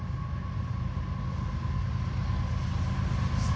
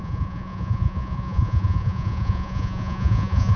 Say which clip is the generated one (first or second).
second